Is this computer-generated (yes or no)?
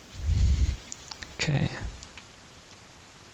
yes